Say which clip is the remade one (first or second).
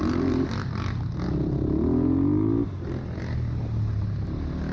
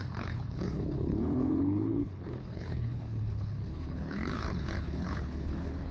second